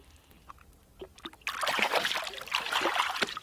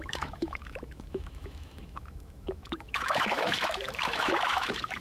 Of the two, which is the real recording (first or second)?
first